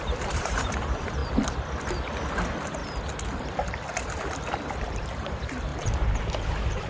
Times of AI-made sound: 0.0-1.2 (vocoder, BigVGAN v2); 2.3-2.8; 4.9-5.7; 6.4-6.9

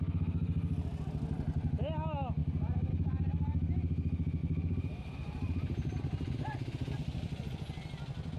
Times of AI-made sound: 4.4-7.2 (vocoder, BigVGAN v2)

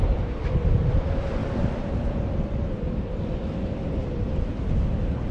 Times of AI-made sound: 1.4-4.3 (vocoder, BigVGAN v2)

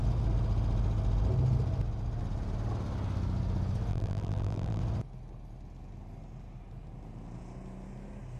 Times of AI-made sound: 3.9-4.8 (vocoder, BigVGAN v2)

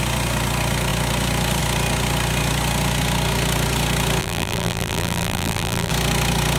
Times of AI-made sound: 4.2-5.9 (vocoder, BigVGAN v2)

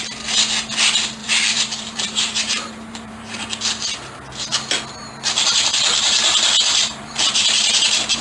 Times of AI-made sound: 1.2-3.4 (vocoder, BigVGAN v2); 5.0-8.2